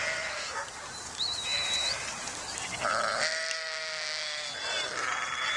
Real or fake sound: fake